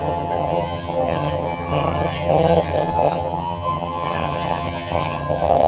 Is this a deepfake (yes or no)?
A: yes